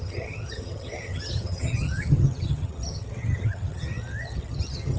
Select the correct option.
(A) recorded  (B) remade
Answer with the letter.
B